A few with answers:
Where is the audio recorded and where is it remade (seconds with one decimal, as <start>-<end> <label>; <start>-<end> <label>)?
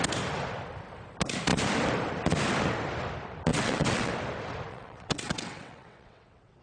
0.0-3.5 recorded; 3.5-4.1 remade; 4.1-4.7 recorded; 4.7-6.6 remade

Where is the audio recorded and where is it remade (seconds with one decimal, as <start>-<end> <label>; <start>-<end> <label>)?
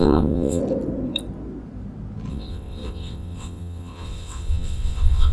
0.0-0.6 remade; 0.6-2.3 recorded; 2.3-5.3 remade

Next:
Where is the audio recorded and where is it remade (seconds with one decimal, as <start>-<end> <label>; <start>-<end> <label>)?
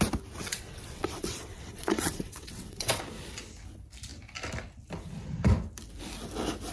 0.0-0.4 recorded; 0.4-3.0 remade; 3.0-6.7 recorded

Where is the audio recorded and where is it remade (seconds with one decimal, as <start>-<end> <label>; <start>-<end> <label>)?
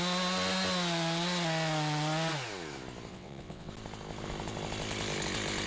0.0-3.1 recorded; 3.1-3.7 remade; 3.7-5.7 recorded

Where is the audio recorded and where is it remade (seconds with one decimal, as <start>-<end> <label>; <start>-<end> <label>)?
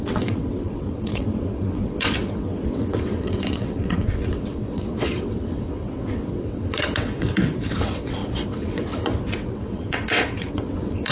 0.0-11.1 remade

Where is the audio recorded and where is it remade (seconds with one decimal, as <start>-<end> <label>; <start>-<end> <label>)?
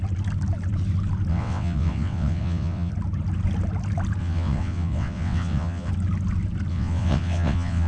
0.0-1.3 recorded; 1.3-2.9 remade; 2.9-4.2 recorded; 4.2-5.9 remade; 5.9-6.7 recorded; 6.7-7.9 remade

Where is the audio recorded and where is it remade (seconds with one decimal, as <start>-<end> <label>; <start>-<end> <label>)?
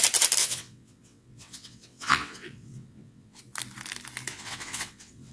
0.0-0.4 recorded; 0.4-3.4 remade; 3.4-4.3 recorded; 4.3-5.3 remade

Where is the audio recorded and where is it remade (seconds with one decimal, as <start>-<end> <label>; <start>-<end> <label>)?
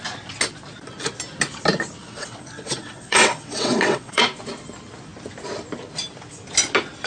0.0-2.0 recorded; 2.0-4.2 remade; 4.2-7.1 recorded